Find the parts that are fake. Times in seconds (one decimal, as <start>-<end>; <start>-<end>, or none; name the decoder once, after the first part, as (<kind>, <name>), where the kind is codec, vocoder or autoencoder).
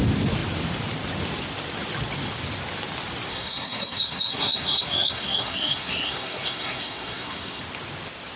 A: 3.3-7.6 (codec, SNAC)